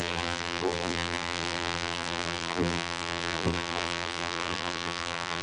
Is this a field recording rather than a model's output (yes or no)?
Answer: no